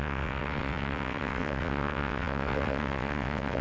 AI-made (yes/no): yes